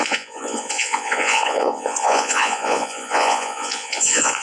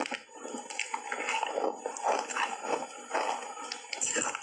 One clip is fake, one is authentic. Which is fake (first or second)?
first